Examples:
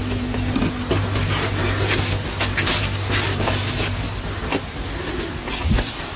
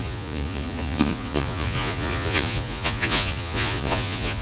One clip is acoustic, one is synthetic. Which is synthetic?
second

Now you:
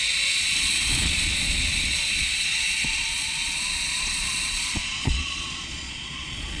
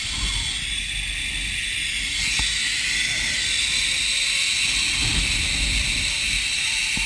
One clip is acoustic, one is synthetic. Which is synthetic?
first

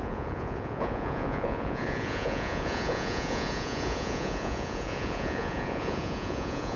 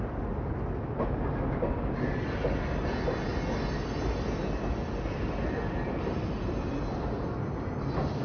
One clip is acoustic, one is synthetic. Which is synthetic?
first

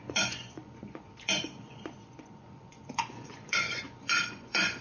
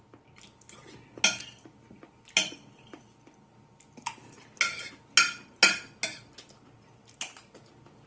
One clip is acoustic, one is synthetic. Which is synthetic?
first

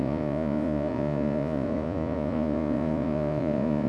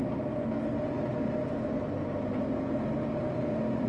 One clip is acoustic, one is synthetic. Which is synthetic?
first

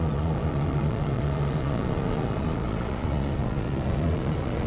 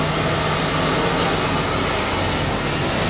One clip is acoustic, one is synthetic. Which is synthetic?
first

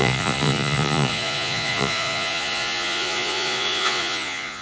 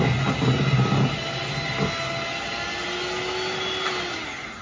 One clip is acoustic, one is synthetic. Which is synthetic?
first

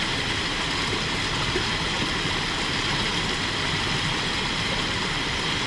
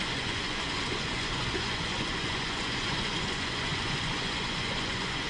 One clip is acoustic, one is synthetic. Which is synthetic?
second